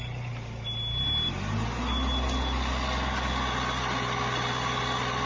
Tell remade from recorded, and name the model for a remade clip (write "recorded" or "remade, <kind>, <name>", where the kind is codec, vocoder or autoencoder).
recorded